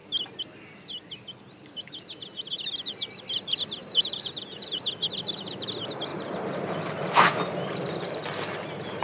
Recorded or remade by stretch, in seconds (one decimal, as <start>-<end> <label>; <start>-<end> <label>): 0.0-3.8 recorded; 3.8-4.8 remade; 4.8-6.1 recorded; 6.1-6.7 remade; 6.7-9.0 recorded